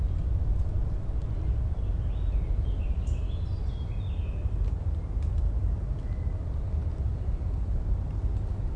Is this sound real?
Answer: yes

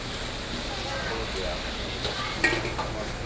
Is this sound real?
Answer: yes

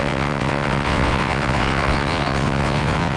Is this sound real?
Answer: no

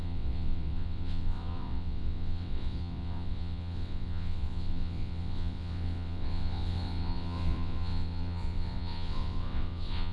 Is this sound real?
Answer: no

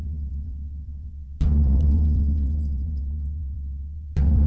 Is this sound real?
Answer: no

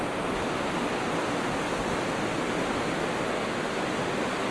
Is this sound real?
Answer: yes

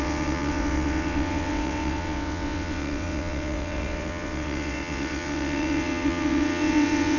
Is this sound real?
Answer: no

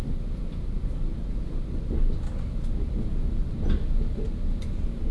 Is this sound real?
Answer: yes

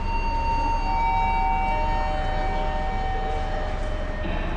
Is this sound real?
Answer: yes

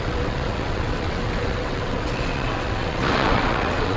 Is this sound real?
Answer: no